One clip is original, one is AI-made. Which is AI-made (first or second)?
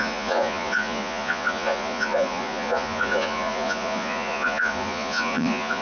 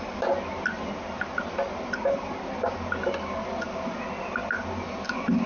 first